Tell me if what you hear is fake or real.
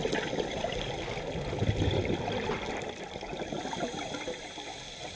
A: real